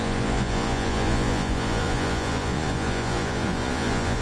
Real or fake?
fake